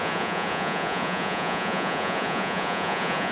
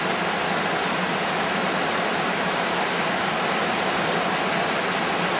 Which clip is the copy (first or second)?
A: first